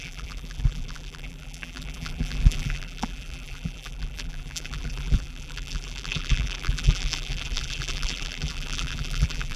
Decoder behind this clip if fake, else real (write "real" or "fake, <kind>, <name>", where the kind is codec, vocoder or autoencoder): fake, vocoder, BigVGAN v2